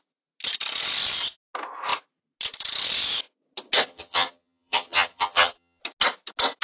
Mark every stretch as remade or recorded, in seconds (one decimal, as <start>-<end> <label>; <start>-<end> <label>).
0.0-3.9 recorded; 3.9-5.8 remade; 5.8-6.6 recorded